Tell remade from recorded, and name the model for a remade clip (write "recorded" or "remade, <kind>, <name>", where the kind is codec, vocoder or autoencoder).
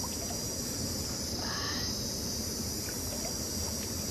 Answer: recorded